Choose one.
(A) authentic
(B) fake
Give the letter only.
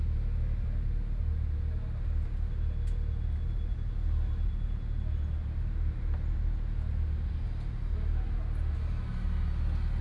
A